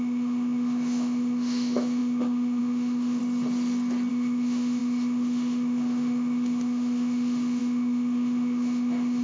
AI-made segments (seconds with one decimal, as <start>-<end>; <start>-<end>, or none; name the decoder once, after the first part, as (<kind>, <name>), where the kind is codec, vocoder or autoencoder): 0.0-3.2 (autoencoder, DAC-VAE); 4.1-9.2